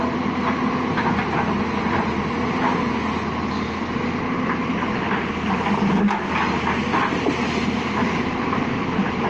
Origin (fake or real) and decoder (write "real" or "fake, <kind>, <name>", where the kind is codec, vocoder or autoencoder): real